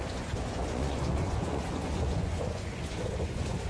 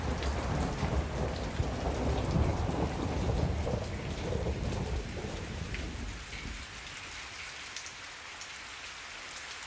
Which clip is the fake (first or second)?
first